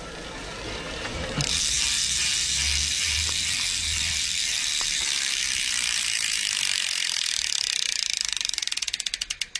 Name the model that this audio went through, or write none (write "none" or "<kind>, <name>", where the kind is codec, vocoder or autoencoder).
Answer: vocoder, BigVGAN v2